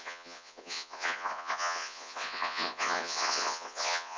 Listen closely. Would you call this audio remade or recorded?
remade